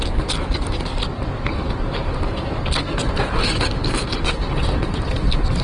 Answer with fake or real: real